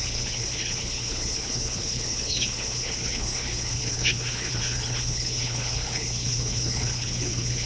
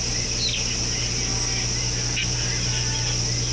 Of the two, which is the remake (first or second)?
first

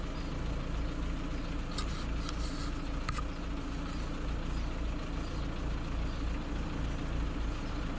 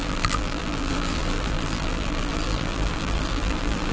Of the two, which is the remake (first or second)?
second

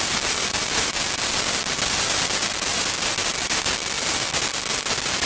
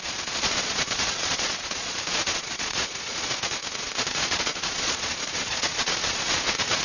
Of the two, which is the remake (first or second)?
second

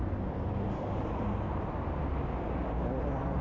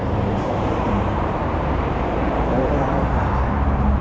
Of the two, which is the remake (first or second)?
second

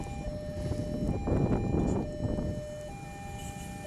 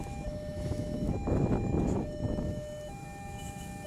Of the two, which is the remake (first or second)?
second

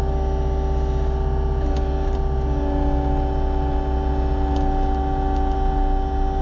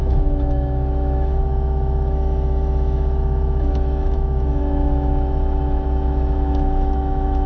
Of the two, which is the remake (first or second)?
second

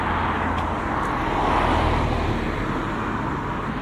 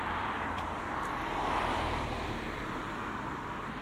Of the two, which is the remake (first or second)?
second